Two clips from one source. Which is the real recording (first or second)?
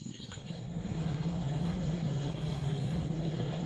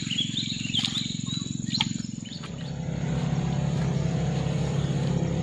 second